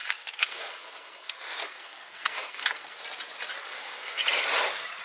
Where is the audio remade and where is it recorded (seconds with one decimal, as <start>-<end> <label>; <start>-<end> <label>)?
0.0-3.0 remade; 3.0-3.7 recorded; 3.7-4.2 remade; 4.2-5.0 recorded

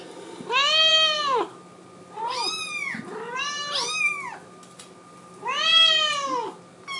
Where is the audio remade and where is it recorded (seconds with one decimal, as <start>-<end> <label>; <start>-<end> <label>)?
0.0-7.0 recorded

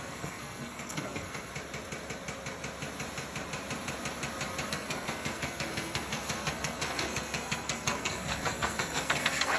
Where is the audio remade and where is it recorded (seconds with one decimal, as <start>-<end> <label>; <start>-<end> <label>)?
0.0-1.5 remade; 1.5-4.7 recorded; 4.7-9.6 remade

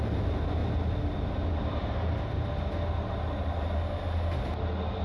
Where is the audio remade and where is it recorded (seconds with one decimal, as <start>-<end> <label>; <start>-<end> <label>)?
0.0-5.0 recorded

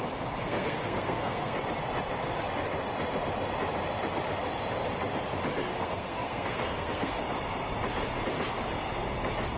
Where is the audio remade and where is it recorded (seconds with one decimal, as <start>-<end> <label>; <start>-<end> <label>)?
0.0-0.4 recorded; 0.4-1.6 remade; 1.6-5.7 recorded; 5.7-7.2 remade; 7.2-9.6 recorded

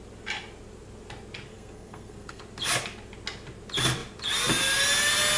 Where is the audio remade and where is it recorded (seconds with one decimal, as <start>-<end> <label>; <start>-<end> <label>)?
0.0-1.5 recorded; 1.5-2.4 remade; 2.4-5.4 recorded

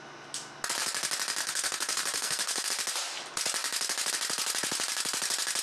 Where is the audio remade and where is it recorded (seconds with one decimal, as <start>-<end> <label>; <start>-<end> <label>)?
0.0-1.4 recorded; 1.4-2.7 remade; 2.7-5.6 recorded

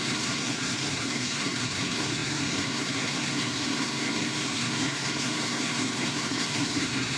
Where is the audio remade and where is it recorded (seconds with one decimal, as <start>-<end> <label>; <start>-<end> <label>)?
0.0-7.2 remade